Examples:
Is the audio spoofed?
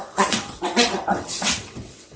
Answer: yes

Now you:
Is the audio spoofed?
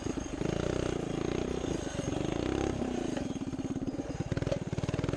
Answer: no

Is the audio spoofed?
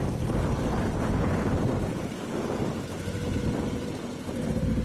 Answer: no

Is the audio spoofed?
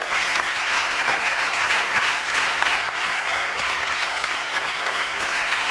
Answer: yes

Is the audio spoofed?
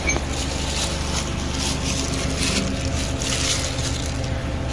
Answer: no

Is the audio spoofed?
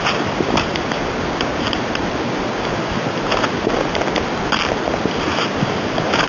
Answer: no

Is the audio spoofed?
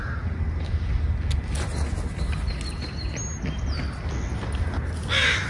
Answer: no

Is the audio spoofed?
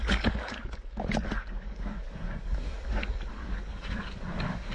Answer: yes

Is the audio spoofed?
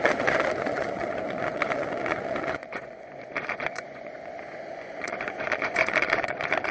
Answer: yes